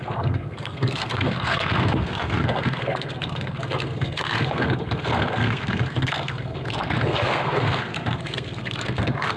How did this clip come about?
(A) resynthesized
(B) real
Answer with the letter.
A